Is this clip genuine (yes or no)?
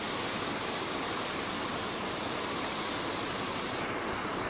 yes